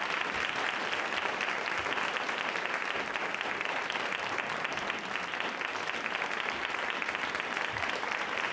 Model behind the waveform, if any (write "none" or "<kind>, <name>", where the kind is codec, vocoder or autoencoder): none